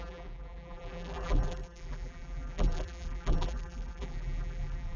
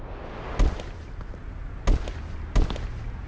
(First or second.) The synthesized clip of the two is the first